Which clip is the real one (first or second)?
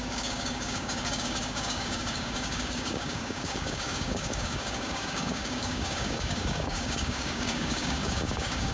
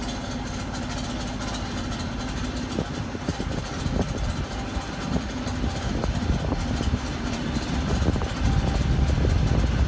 second